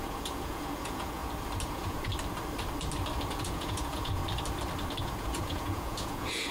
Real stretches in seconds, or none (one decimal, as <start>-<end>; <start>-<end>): 1.2-1.7; 2.1-3.3; 4.2-5.0